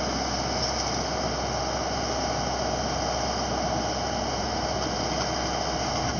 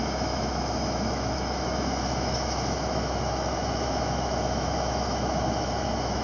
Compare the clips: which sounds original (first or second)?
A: first